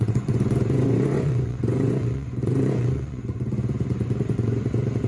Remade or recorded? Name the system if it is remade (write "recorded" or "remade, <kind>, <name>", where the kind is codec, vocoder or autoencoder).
remade, vocoder, Vocos